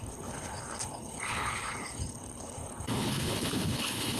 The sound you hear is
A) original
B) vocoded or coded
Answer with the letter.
B